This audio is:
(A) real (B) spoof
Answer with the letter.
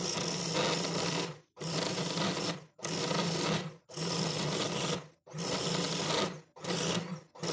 A